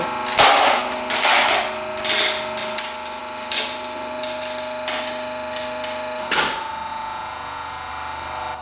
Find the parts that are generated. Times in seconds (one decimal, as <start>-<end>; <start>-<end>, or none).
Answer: 6.9-7.9